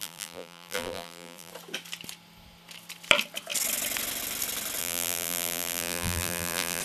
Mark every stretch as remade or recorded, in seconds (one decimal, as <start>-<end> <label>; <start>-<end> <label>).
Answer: 0.0-1.5 remade; 1.5-4.8 recorded; 4.8-6.8 remade